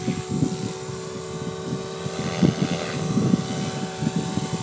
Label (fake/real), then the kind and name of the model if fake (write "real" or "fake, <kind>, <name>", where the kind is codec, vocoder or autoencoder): real